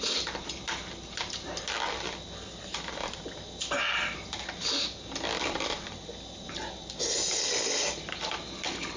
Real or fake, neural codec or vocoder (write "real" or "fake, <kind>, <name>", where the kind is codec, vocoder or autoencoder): real